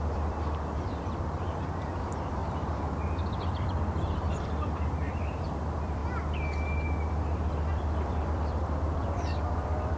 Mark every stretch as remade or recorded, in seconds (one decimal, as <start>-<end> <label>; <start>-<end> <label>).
0.0-6.0 remade; 6.0-7.7 recorded; 7.7-10.0 remade